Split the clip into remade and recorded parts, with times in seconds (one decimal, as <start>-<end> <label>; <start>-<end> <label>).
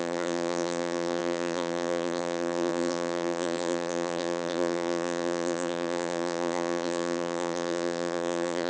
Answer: 0.0-8.7 remade